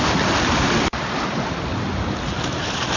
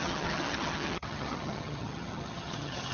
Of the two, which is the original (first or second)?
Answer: first